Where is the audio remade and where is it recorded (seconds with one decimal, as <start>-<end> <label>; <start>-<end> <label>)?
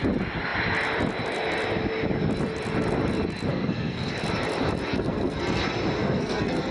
0.0-3.5 recorded; 3.5-4.1 remade; 4.1-4.9 recorded; 4.9-5.6 remade; 5.6-6.0 recorded; 6.0-6.7 remade